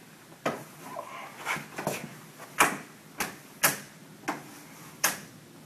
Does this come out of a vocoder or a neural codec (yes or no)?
no